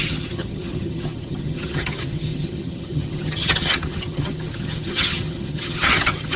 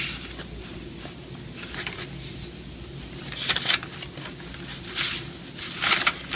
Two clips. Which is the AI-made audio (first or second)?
first